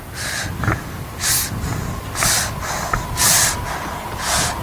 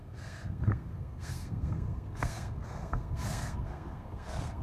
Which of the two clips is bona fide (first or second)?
first